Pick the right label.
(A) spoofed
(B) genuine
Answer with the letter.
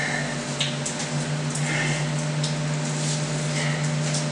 B